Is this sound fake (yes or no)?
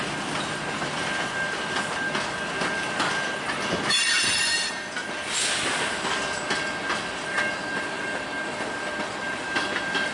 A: no